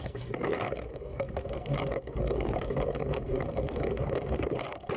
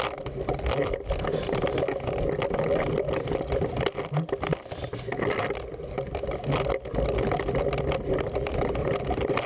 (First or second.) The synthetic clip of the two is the first